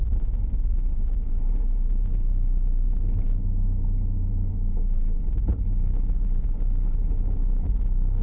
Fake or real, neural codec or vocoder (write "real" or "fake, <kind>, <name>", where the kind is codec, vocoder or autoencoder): fake, vocoder, BigVGAN v2